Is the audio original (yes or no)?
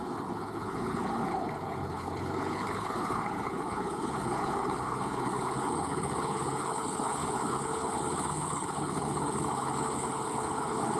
no